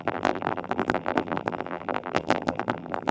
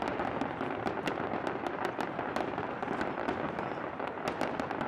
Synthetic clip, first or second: first